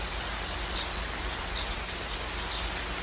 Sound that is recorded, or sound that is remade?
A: recorded